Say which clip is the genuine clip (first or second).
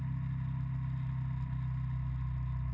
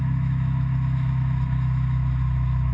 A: first